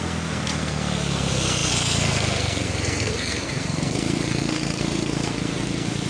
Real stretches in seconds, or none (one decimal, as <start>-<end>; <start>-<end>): none